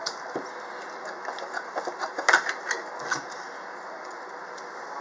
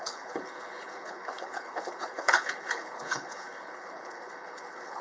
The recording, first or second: first